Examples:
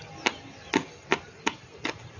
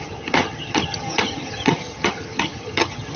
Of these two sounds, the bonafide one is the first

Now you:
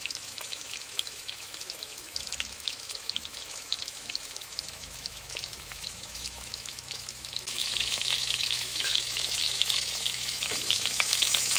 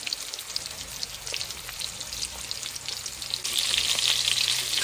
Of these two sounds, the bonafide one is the second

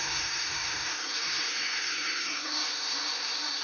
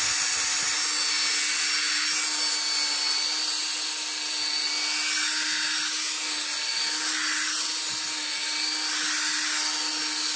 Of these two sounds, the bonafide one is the second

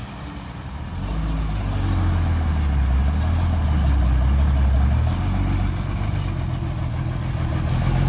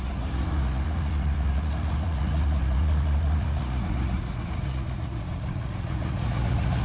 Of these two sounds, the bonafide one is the first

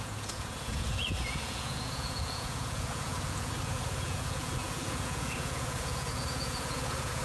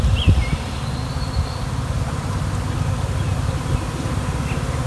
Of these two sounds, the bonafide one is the second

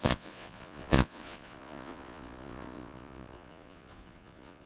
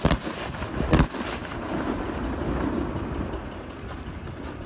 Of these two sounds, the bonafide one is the second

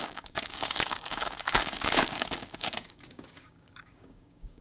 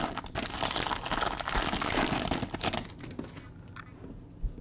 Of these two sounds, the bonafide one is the second